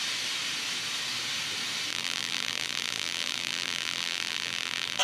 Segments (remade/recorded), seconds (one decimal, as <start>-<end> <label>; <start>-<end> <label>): 0.0-1.9 recorded; 1.9-5.0 remade